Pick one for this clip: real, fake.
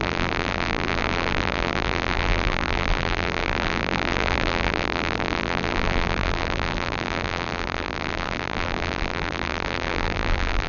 fake